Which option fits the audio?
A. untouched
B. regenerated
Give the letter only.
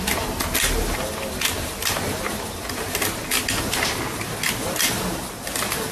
A